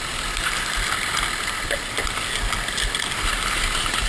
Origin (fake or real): real